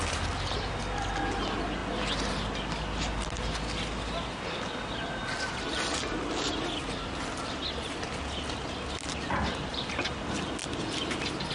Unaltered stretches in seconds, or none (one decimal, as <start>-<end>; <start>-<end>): 0.0-11.5